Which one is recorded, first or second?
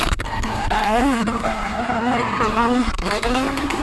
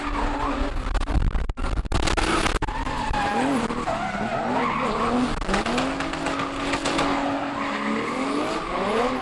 second